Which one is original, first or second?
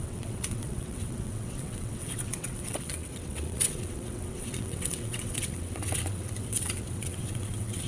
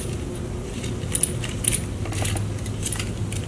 second